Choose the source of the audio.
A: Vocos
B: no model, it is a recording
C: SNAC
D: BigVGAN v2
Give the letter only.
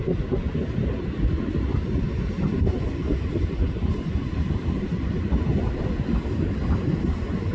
B